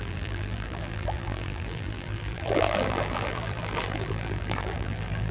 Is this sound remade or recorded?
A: remade